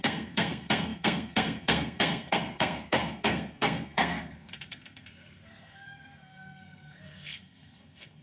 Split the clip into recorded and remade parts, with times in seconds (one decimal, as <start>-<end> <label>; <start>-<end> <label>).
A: 0.0-8.2 remade